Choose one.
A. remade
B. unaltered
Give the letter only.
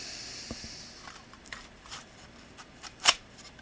A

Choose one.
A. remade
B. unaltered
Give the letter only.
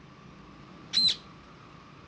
B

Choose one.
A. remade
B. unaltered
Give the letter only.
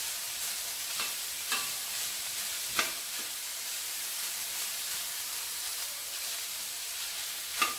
A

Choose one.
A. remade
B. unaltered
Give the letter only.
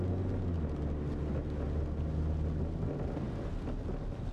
B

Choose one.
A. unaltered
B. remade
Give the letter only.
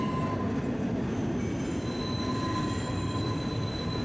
A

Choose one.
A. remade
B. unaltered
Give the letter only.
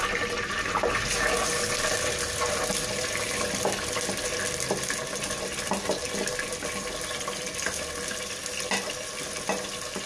B